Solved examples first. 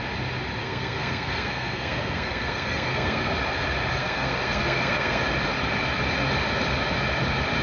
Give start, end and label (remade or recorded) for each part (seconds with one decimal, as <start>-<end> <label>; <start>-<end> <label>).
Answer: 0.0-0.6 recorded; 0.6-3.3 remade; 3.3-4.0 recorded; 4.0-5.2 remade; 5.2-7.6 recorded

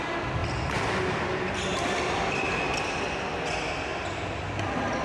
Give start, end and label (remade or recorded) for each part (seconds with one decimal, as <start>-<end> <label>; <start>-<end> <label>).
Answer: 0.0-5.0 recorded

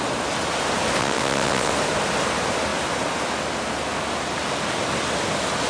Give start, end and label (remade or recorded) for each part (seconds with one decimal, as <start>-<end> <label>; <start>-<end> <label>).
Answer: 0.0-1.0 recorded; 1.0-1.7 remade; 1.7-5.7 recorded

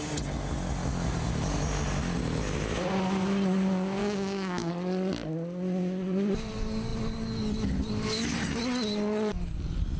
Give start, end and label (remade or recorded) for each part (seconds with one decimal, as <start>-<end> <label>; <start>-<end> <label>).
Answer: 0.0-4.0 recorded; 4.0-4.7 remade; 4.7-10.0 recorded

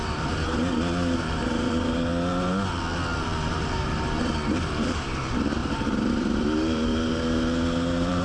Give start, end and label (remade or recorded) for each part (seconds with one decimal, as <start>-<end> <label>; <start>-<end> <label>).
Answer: 0.0-2.1 remade; 2.1-3.2 recorded; 3.2-8.2 remade

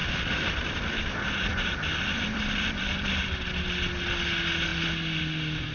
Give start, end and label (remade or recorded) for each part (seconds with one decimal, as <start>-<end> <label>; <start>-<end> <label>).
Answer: 0.0-3.4 remade; 3.4-5.7 recorded

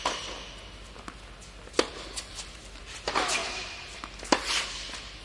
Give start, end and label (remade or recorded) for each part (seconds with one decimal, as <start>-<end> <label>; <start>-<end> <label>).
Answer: 0.0-1.9 recorded; 1.9-2.8 remade; 2.8-3.4 recorded; 3.4-4.0 remade; 4.0-5.2 recorded

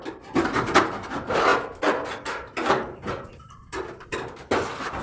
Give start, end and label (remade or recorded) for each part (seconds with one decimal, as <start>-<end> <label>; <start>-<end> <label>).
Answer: 0.0-1.5 recorded; 1.5-4.5 remade; 4.5-5.0 recorded